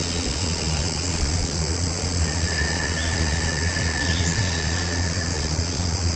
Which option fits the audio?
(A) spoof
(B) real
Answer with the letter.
A